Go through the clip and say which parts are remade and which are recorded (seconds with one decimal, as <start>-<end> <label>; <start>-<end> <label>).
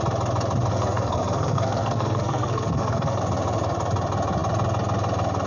0.0-0.7 recorded; 0.7-3.2 remade; 3.2-5.5 recorded